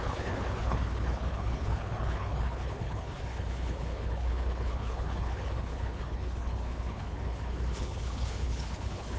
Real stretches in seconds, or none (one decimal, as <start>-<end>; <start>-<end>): none